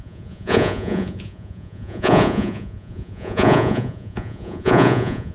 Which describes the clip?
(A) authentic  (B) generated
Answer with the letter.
B